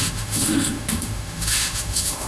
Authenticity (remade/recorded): remade